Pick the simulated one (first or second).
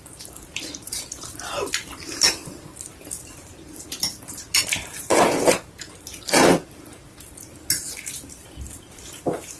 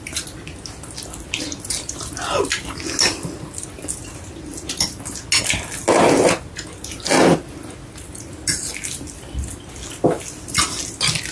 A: first